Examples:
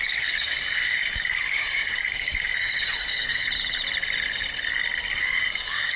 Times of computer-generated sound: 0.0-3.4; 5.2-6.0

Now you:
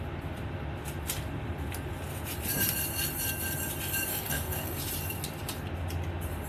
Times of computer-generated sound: 4.1-4.8

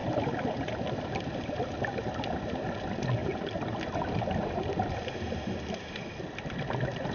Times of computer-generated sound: none

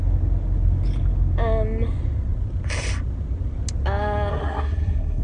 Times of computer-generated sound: 4.3-5.2

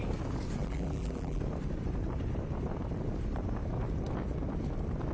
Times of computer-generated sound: 0.6-1.4

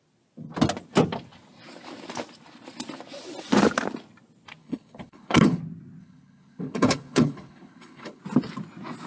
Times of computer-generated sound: 4.6-5.6; 6.0-8.2

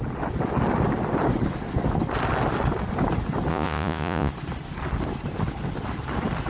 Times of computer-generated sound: 3.5-4.3

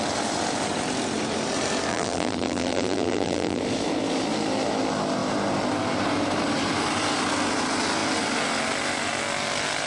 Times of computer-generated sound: 1.9-3.6